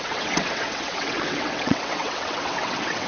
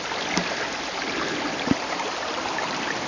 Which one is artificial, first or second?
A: first